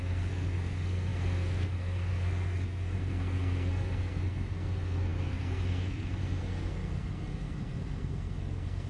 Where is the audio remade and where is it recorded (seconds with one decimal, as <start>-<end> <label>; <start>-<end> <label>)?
0.0-8.9 remade